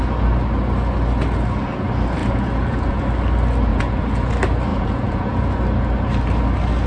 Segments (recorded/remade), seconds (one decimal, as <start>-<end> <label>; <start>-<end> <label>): 0.0-2.2 recorded; 2.2-3.0 remade; 3.0-3.7 recorded; 3.7-4.3 remade; 4.3-4.7 recorded; 4.7-5.5 remade; 5.5-6.9 recorded